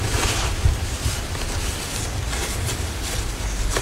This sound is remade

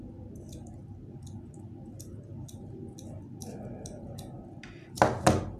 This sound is recorded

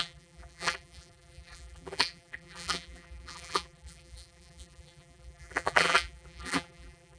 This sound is remade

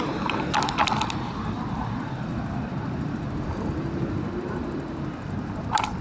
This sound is remade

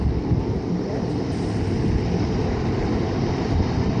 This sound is remade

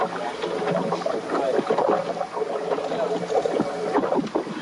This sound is recorded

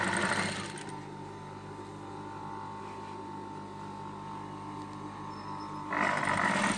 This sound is recorded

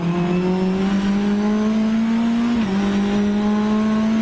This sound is recorded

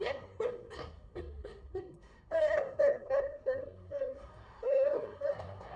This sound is remade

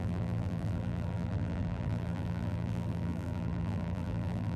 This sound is remade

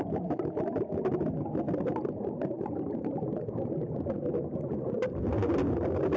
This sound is recorded